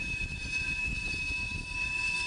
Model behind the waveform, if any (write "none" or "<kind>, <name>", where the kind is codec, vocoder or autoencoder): vocoder, BigVGAN v2